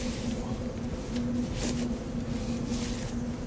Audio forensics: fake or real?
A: real